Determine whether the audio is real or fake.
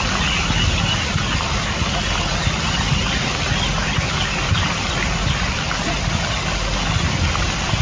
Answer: real